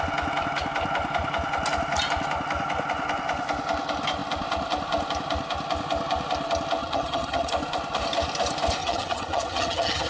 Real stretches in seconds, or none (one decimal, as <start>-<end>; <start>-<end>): 0.0-6.8; 7.5-8.8